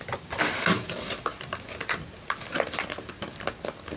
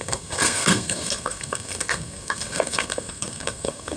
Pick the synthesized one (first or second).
second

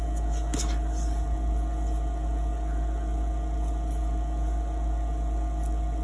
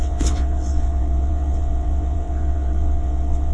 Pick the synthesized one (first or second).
second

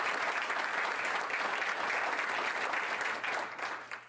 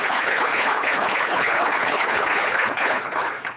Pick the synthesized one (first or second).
second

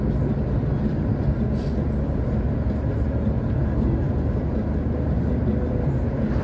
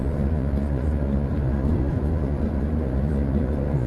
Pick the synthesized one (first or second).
second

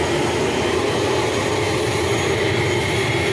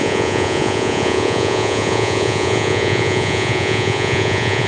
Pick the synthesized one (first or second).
second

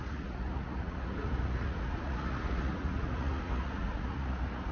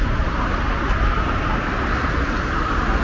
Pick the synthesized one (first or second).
first